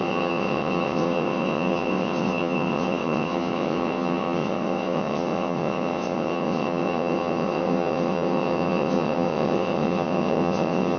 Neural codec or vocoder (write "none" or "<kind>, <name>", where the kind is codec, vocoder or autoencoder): vocoder, WaveNeXt